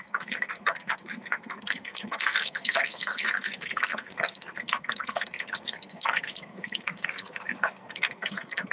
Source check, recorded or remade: remade